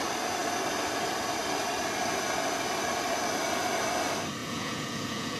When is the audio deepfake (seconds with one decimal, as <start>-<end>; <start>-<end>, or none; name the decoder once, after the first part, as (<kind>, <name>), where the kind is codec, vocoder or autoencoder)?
4.4-5.4 (vocoder, Vocos)